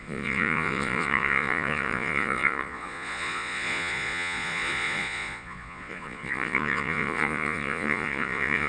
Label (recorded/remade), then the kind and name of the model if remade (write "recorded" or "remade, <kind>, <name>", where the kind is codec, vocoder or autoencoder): remade, vocoder, Vocos